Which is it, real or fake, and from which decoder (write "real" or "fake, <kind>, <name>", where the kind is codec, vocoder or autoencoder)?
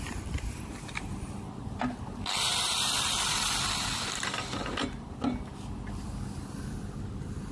real